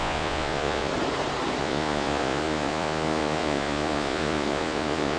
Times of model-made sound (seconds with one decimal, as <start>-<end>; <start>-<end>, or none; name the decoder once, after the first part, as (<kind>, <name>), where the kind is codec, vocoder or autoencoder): 0.0-0.9 (vocoder, Vocos); 1.6-5.2